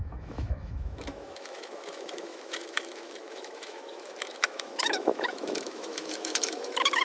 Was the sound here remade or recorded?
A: remade